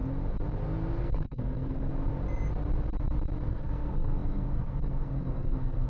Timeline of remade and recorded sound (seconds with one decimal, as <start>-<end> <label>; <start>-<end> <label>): 0.0-1.0 recorded; 1.0-1.9 remade; 1.9-3.4 recorded; 3.4-5.9 remade